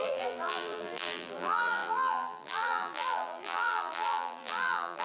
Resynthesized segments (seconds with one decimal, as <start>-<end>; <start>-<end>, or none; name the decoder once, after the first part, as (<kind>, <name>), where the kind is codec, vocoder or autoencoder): 0.0-5.0 (vocoder, BigVGAN v2)

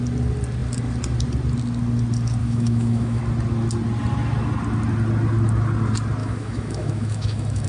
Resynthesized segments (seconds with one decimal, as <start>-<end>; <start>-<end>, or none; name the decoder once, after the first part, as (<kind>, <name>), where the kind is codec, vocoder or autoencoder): 2.4-3.2 (autoencoder, DAC-VAE); 6.2-7.7